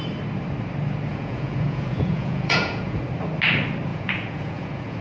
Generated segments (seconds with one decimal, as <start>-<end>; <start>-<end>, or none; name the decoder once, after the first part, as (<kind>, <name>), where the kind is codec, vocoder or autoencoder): 1.1-3.0 (vocoder, Vocos); 3.9-5.0